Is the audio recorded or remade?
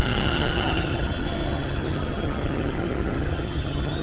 remade